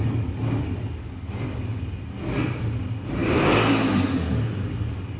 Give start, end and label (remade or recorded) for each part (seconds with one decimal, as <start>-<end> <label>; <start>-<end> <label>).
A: 0.0-5.2 recorded